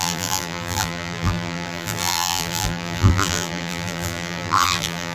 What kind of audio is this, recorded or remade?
remade